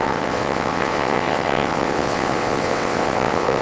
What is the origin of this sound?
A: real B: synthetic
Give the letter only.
B